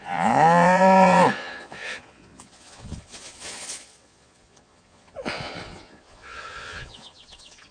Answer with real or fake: fake